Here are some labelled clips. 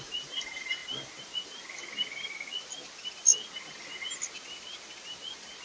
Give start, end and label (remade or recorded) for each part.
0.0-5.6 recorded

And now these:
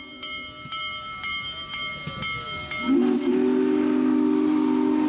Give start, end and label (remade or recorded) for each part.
0.0-5.1 recorded